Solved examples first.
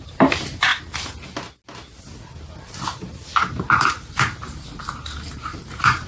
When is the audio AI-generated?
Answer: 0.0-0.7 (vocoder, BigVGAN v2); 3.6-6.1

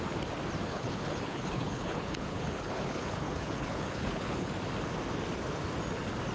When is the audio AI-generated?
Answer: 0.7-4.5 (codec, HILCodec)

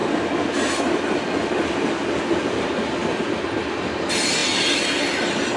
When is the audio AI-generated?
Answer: none